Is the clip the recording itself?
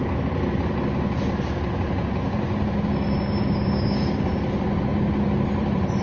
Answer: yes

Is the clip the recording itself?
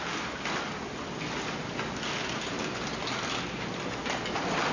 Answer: yes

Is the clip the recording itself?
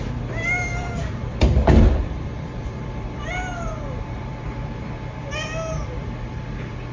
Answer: no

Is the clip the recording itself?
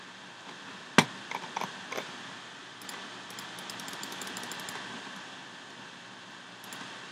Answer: yes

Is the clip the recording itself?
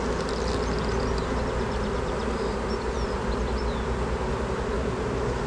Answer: yes